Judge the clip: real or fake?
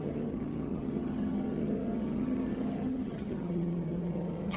fake